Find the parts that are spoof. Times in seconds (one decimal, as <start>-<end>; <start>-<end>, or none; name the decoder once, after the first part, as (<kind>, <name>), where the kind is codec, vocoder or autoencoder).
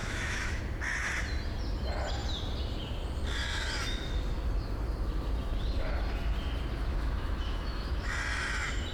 0.0-0.6 (autoencoder, DAC-VAE); 6.9-8.1